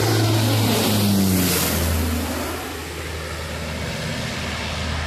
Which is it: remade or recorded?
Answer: recorded